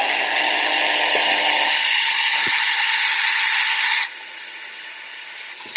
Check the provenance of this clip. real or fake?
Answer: real